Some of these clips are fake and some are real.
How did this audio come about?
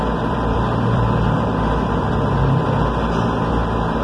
fake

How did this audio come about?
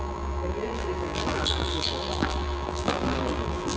fake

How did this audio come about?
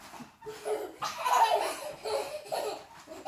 real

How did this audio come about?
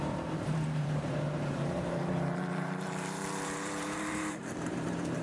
fake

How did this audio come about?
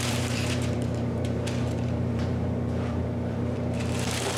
fake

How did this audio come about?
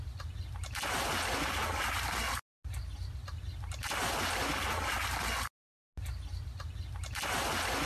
real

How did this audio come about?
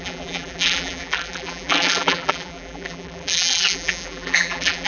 fake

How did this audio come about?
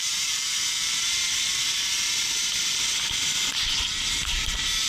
fake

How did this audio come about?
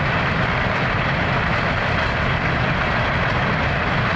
real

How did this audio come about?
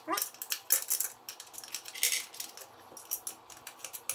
real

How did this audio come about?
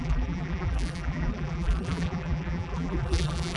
fake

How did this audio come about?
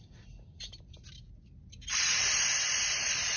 real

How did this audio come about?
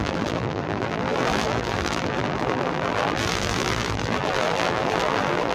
fake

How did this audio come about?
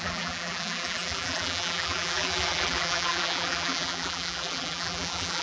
fake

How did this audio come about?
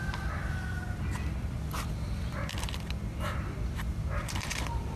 fake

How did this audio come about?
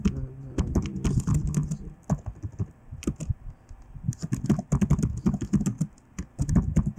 real